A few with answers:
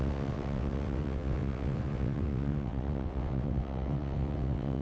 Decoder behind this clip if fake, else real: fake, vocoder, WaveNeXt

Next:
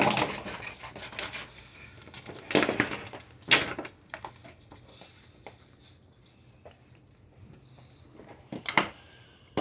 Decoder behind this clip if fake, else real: real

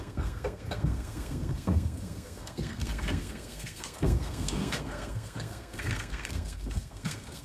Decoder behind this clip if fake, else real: fake, codec, SNAC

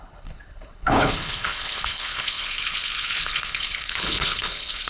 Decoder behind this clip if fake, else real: fake, codec, HILCodec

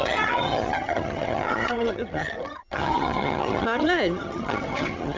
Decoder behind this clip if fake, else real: fake, vocoder, HiFi-GAN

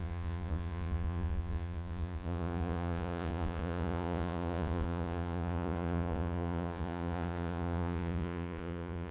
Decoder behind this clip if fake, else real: fake, vocoder, Vocos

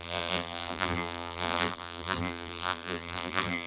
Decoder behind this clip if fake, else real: fake, vocoder, BigVGAN v2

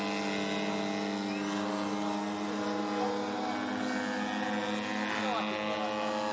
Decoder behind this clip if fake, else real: real